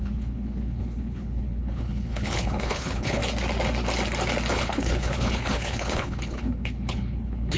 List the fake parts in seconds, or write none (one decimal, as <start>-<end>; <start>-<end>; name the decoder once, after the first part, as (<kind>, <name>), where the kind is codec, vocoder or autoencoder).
0.0-3.2 (codec, HILCodec); 4.5-7.6